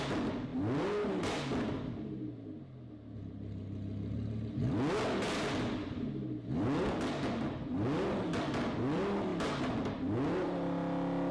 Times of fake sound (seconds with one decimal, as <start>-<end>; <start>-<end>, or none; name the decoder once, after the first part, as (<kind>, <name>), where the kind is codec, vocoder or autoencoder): none